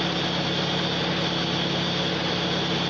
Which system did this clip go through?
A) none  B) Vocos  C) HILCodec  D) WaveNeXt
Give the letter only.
A